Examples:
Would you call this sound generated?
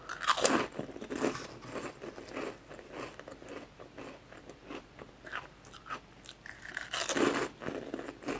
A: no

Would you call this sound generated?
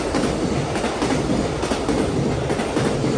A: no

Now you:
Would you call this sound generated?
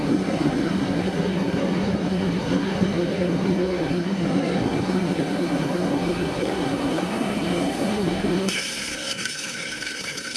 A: yes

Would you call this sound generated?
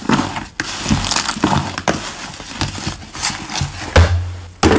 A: no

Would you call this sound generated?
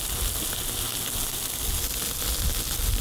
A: no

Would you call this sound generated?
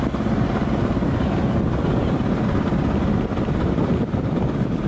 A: no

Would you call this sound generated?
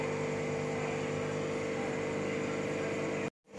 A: no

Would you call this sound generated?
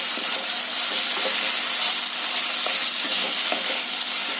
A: no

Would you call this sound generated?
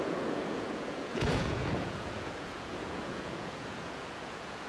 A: yes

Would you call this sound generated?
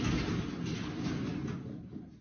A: no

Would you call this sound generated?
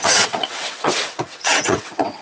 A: yes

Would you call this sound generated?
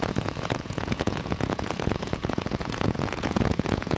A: yes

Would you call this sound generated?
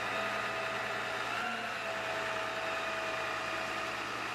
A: no